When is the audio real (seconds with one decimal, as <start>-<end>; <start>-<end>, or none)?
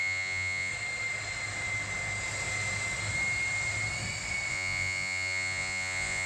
0.7-4.5